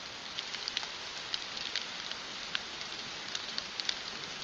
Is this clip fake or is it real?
real